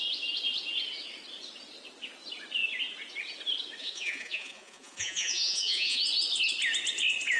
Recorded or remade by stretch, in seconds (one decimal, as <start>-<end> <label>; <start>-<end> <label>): 0.0-3.8 recorded; 3.8-6.0 remade; 6.0-7.4 recorded